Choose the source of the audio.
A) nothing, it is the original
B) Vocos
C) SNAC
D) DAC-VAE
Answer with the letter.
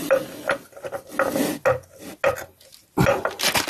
A